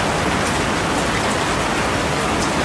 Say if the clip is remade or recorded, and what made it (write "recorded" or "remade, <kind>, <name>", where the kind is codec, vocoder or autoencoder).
recorded